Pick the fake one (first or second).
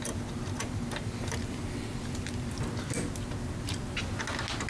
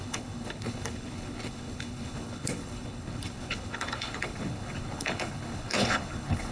second